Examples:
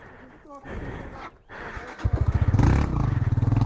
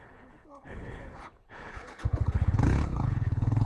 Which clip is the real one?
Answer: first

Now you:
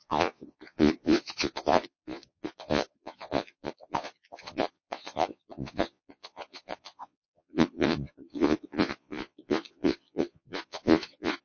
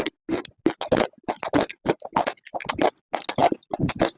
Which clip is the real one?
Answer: second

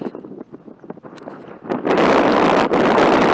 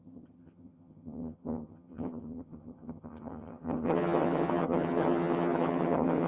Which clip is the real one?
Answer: first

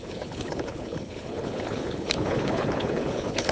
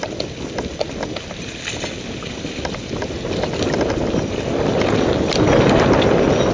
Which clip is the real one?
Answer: second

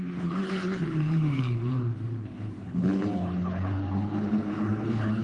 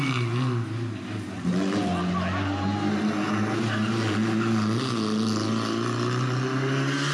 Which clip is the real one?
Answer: second